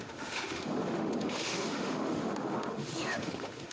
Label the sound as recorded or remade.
remade